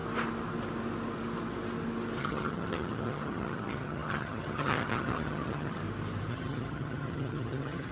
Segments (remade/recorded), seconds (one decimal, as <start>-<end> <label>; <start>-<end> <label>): 0.0-2.2 recorded; 2.2-5.8 remade; 5.8-6.3 recorded; 6.3-7.9 remade